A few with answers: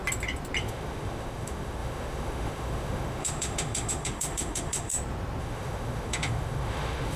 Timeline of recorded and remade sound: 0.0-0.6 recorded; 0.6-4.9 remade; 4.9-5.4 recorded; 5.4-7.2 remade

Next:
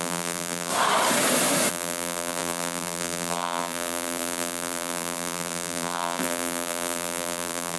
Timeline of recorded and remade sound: 0.0-0.7 remade; 0.7-1.7 recorded; 1.7-7.8 remade